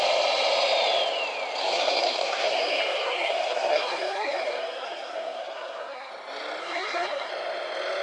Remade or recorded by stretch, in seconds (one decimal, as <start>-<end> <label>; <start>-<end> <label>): 0.0-1.6 recorded; 1.6-6.1 remade; 6.1-6.6 recorded; 6.6-7.3 remade; 7.3-8.0 recorded